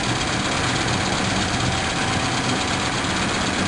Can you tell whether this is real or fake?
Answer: real